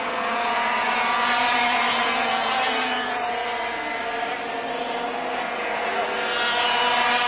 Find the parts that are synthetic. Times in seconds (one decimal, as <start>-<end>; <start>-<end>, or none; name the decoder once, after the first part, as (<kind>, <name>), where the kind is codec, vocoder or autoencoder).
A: 0.0-3.4 (vocoder, Vocos); 4.7-5.9